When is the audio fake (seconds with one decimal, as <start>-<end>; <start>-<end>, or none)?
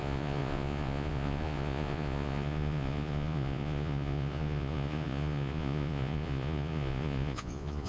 0.0-7.9